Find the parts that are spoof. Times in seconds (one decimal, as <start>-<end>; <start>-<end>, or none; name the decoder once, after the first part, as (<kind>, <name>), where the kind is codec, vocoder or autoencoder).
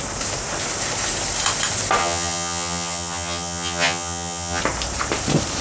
2.0-4.6 (vocoder, HiFi-GAN)